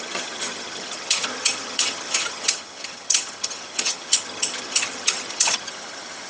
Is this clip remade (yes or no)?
yes